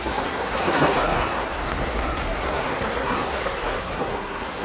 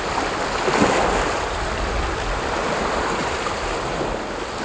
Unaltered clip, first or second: second